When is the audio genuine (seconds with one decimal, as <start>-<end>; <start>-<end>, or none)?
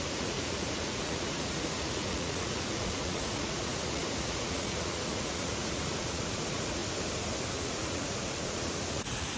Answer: 6.8-7.5